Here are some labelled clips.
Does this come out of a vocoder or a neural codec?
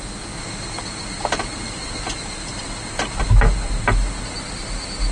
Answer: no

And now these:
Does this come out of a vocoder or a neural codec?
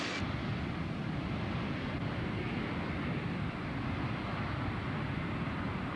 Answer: yes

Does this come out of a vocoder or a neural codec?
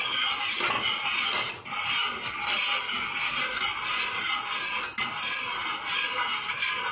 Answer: no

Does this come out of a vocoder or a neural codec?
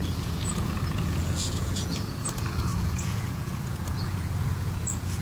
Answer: yes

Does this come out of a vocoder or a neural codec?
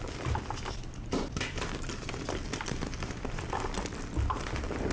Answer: yes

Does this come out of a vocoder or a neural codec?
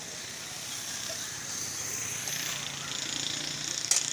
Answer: no